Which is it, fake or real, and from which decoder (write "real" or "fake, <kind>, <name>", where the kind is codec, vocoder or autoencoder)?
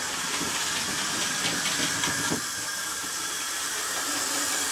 fake, vocoder, BigVGAN v2